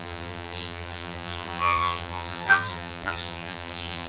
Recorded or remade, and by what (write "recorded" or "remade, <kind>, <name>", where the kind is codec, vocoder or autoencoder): remade, vocoder, BigVGAN v2